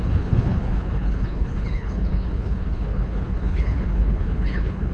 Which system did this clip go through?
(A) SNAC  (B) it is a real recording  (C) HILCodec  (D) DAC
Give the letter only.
C